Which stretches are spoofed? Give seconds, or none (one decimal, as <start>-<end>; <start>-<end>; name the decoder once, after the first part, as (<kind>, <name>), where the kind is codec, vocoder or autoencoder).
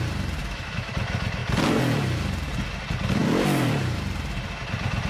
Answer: 0.4-0.9 (autoencoder, DAC-VAE)